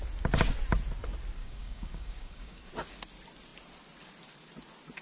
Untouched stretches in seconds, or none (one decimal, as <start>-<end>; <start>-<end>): 0.0-1.4; 2.7-5.0